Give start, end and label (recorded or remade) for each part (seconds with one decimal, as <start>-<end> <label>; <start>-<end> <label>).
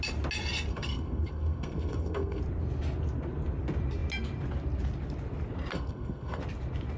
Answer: 0.0-0.7 recorded; 0.7-2.4 remade; 2.4-5.7 recorded; 5.7-6.4 remade; 6.4-7.0 recorded